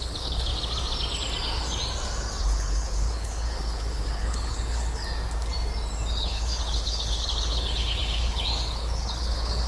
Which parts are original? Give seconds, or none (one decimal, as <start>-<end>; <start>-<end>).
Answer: 0.5-2.4; 5.0-6.1